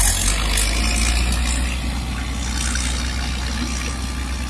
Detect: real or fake real